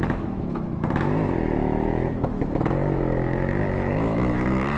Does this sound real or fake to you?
fake